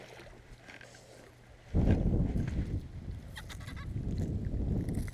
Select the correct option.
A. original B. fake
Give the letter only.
A